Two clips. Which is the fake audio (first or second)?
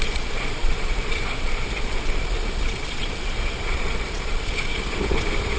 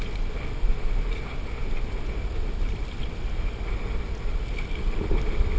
first